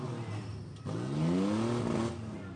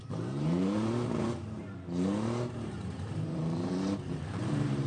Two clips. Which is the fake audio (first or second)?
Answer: second